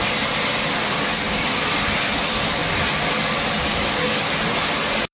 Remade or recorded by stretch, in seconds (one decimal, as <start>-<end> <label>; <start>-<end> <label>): 0.0-5.1 recorded